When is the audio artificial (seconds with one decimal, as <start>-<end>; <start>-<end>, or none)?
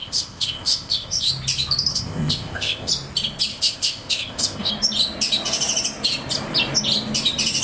0.0-1.3; 1.9-2.9; 3.5-4.7